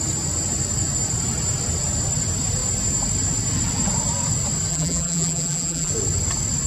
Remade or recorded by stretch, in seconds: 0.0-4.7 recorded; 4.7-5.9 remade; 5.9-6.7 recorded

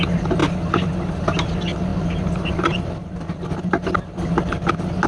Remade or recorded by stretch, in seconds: 0.0-5.1 recorded

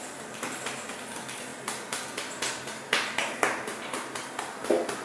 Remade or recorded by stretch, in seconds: 0.0-5.0 recorded